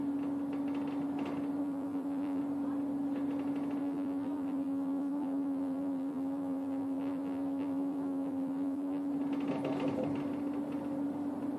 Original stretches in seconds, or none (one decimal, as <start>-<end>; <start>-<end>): 0.0-1.6; 2.4-3.8; 9.1-11.6